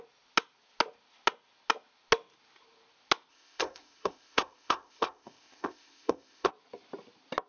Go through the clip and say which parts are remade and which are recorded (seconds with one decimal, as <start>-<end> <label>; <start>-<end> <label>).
0.0-3.3 recorded; 3.3-6.5 remade; 6.5-7.5 recorded